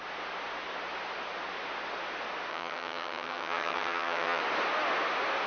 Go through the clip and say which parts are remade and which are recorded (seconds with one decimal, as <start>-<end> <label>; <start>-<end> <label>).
0.0-2.5 recorded; 2.5-4.4 remade; 4.4-5.5 recorded